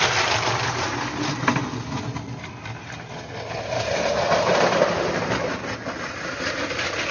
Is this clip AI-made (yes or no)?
no